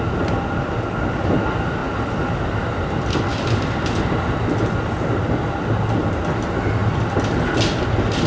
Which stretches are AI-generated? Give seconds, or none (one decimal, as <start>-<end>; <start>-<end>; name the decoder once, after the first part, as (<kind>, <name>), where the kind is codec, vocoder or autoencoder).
none